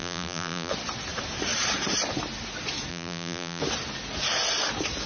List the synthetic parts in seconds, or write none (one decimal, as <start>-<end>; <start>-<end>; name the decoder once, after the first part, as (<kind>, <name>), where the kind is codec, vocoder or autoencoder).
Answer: 0.0-0.7 (vocoder, BigVGAN v2); 2.9-3.6